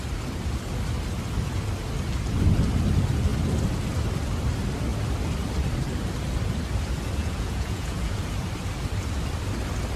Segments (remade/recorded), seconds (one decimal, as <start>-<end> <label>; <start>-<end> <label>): 0.0-7.2 recorded; 7.2-8.2 remade; 8.2-10.0 recorded

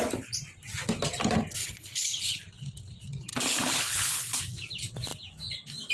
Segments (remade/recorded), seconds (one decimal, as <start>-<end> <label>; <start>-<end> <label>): 0.0-1.6 recorded; 1.6-2.4 remade; 2.4-3.3 recorded; 3.3-4.4 remade; 4.4-5.9 recorded

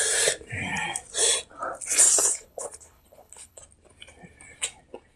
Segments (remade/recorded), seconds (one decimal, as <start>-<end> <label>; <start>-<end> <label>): 0.0-2.3 recorded; 2.3-3.6 remade; 3.6-5.2 recorded